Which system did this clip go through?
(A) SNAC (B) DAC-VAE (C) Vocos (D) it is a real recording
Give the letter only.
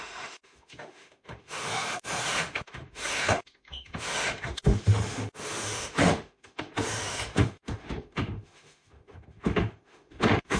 B